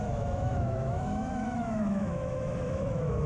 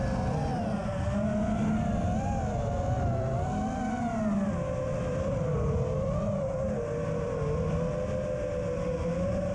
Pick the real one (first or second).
second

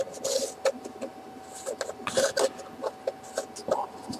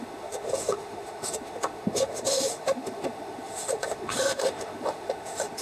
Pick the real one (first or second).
first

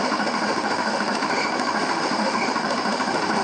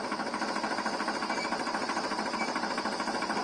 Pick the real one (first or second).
second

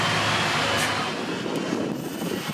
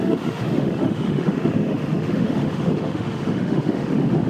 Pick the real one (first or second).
first